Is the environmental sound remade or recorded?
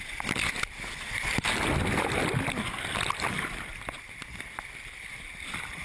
recorded